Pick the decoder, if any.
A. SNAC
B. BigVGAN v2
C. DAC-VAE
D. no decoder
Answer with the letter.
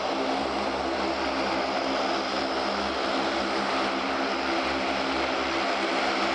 D